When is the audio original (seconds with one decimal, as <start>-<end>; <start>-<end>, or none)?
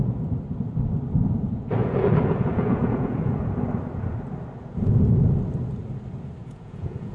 0.0-1.8; 3.4-6.4